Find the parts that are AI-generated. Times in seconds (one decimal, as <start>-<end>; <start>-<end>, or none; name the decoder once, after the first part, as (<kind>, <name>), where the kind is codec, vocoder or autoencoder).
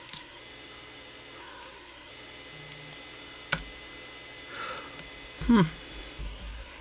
0.0-0.4 (codec, SNAC); 1.4-2.1; 6.2-6.8